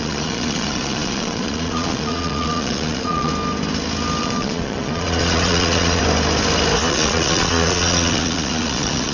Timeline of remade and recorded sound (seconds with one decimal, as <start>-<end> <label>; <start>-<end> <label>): 0.0-3.3 remade; 3.3-4.2 recorded; 4.2-6.0 remade; 6.0-6.9 recorded; 6.9-9.1 remade